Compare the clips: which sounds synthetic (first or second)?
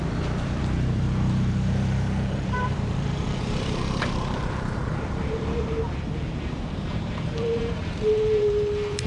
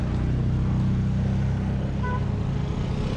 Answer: first